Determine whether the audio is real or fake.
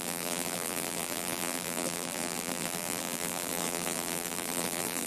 fake